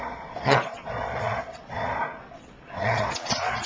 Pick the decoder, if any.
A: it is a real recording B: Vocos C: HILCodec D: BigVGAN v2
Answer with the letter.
B